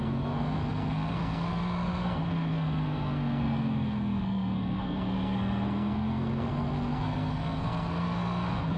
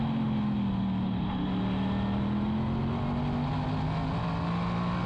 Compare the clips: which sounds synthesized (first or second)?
first